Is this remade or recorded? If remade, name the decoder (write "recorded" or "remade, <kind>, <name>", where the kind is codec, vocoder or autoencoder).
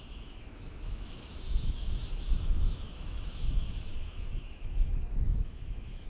remade, autoencoder, DAC-VAE